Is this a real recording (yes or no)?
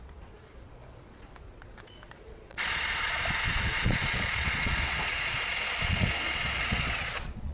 no